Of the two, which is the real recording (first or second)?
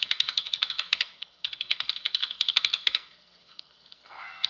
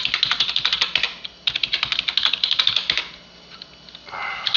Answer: second